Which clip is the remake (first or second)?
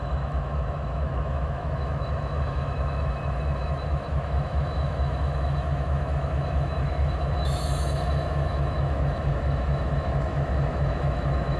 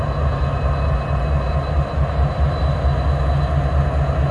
first